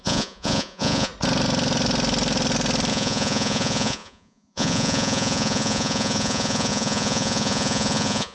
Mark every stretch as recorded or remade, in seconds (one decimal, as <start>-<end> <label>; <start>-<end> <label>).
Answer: 0.0-1.1 remade; 1.1-2.9 recorded; 2.9-8.3 remade